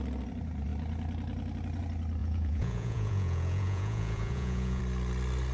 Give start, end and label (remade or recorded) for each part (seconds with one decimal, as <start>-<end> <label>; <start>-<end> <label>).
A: 0.0-2.2 recorded; 2.2-4.8 remade; 4.8-5.5 recorded

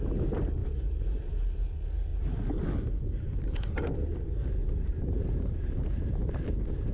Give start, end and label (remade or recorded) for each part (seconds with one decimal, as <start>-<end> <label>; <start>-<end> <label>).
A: 0.0-0.6 recorded; 0.6-1.2 remade; 1.2-4.6 recorded; 4.6-5.8 remade; 5.8-6.9 recorded

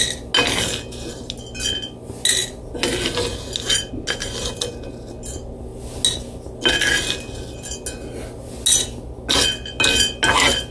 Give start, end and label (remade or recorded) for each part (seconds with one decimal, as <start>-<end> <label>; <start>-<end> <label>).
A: 0.0-10.7 recorded

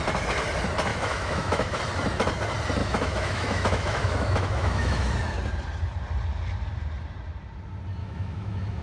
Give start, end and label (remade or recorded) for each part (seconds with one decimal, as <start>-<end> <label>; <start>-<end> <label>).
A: 0.0-0.9 recorded; 0.9-1.8 remade; 1.8-2.8 recorded; 2.8-5.1 remade; 5.1-8.0 recorded; 8.0-8.8 remade

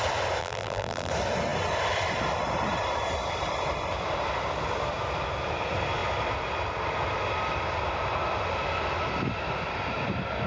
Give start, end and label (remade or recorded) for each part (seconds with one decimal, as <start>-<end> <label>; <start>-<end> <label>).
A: 0.0-0.4 recorded; 0.4-1.1 remade; 1.1-10.5 recorded

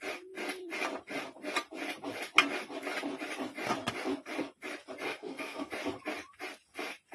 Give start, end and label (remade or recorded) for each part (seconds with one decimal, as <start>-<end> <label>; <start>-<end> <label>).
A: 0.0-5.1 recorded; 5.1-5.7 remade; 5.7-7.1 recorded

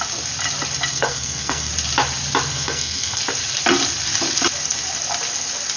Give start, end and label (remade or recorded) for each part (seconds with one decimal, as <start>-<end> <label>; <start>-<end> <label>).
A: 0.0-0.9 recorded; 0.9-1.7 remade; 1.7-2.5 recorded; 2.5-3.2 remade; 3.2-5.8 recorded

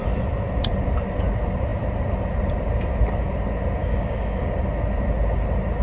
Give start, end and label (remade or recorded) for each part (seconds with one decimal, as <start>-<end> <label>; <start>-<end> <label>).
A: 0.0-3.8 recorded; 3.8-4.5 remade; 4.5-5.8 recorded